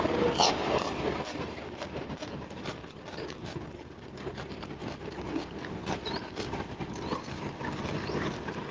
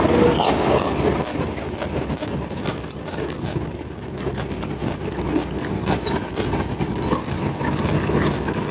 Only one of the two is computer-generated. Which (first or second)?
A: first